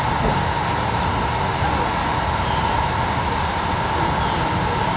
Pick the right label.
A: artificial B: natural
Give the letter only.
B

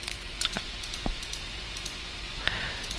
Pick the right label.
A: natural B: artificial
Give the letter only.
B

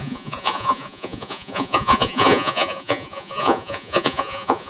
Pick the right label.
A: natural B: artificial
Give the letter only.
B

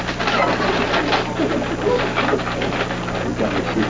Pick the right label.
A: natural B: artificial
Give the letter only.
A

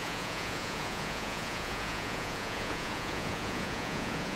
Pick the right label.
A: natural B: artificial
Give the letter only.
B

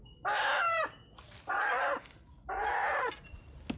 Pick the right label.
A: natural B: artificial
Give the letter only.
A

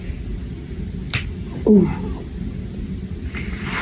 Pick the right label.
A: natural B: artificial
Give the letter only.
A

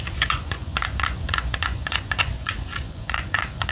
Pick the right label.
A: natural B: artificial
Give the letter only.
B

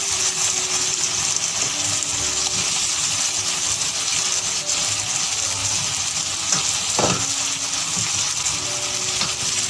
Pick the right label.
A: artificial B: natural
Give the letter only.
B